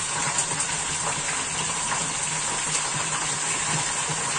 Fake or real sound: real